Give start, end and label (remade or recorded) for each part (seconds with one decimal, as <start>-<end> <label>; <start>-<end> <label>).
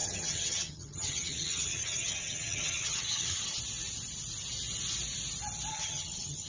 0.0-3.6 remade; 3.6-5.7 recorded; 5.7-6.5 remade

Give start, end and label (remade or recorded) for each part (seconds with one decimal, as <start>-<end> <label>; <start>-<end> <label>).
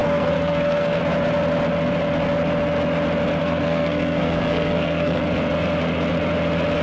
0.0-1.0 remade; 1.0-3.4 recorded; 3.4-5.2 remade; 5.2-6.8 recorded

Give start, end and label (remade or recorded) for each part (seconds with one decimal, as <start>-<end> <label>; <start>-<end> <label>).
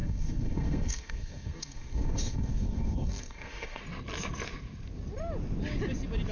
0.0-3.8 remade; 3.8-6.3 recorded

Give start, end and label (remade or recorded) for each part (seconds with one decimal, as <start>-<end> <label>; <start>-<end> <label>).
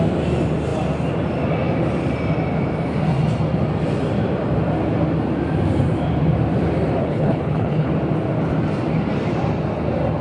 0.0-7.0 recorded; 7.0-7.9 remade; 7.9-10.2 recorded